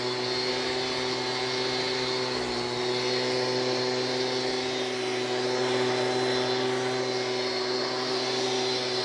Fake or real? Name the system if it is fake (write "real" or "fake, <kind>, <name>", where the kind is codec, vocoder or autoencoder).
real